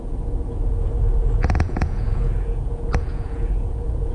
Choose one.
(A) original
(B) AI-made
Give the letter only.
B